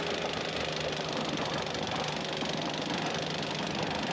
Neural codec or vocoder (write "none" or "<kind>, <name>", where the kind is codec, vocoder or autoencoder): none